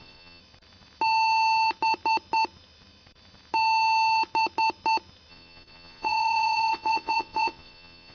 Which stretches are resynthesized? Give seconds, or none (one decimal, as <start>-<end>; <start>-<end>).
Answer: 0.0-0.4; 5.3-8.1